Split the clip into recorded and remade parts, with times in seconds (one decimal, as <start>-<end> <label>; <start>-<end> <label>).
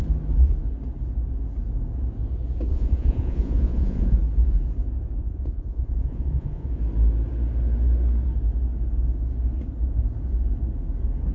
0.0-2.7 recorded; 2.7-4.2 remade; 4.2-5.2 recorded; 5.2-6.8 remade; 6.8-11.3 recorded